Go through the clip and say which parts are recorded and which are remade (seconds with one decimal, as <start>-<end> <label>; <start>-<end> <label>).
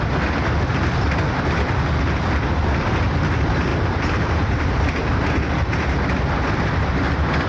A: 0.0-3.7 recorded; 3.7-5.3 remade; 5.3-7.5 recorded